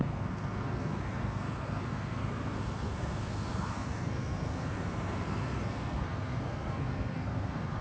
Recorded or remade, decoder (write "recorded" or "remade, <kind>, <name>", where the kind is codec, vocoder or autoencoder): remade, codec, SNAC